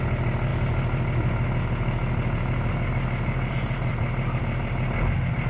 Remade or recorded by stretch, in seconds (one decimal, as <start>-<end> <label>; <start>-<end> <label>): 0.0-5.5 recorded